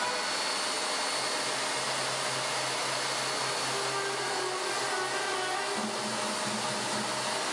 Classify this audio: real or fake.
real